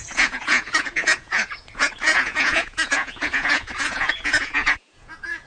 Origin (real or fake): fake